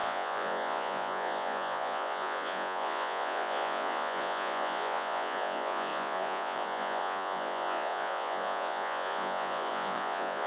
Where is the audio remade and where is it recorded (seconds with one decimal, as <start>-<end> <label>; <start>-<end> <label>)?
0.0-10.5 remade